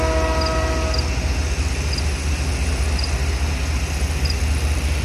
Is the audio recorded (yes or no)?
yes